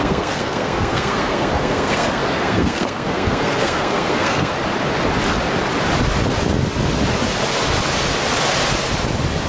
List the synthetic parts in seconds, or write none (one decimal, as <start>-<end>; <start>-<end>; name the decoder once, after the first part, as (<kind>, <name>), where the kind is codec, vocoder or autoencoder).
0.0-4.5 (codec, SNAC)